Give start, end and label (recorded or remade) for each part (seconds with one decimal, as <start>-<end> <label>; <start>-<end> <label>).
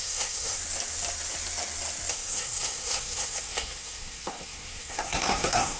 0.0-0.6 remade; 0.6-2.1 recorded; 2.1-5.8 remade